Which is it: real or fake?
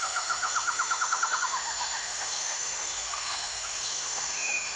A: fake